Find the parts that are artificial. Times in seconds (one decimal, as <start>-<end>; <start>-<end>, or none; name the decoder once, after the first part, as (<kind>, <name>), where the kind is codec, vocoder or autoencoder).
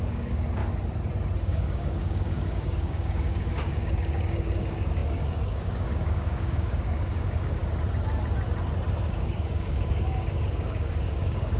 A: 0.0-0.6 (codec, DAC); 1.4-7.6; 9.1-11.6